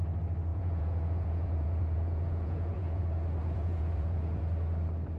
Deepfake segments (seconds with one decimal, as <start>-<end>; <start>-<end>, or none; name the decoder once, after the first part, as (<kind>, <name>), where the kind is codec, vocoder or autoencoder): 0.5-3.0 (vocoder, Vocos); 3.4-4.4